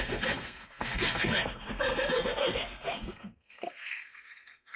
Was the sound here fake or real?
fake